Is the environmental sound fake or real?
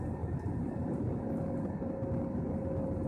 real